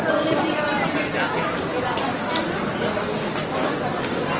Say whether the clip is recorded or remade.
recorded